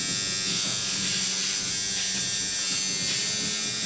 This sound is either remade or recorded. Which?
recorded